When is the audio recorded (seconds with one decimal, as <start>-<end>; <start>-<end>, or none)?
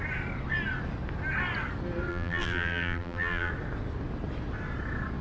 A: 0.0-2.1; 3.5-5.2